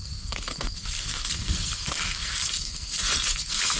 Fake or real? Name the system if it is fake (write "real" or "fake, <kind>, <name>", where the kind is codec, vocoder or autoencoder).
fake, codec, SNAC